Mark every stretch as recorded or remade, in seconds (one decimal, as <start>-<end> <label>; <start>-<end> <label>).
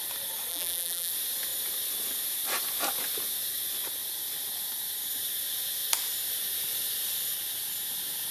0.0-0.5 recorded; 0.5-1.1 remade; 1.1-8.3 recorded